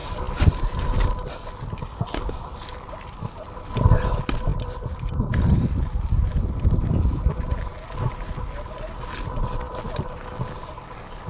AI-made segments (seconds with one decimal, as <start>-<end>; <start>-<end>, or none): 1.8-2.4